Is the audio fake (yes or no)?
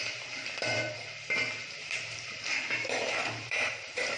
yes